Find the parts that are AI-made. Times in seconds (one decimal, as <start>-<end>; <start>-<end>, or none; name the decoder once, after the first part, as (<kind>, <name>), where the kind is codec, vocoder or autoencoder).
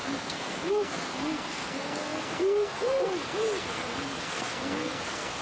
0.0-5.4 (codec, SNAC)